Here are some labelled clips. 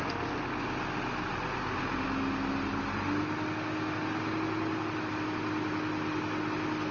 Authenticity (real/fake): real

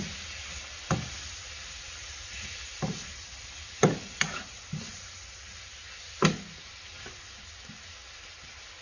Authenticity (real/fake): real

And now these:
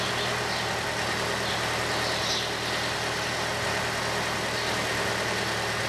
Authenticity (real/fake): real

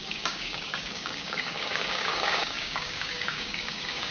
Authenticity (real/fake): fake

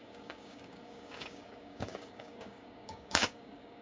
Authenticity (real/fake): fake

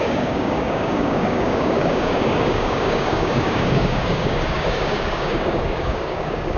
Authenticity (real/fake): fake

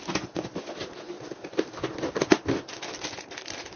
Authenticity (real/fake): real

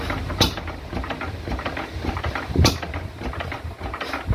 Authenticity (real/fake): real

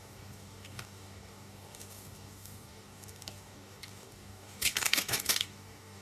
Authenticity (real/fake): fake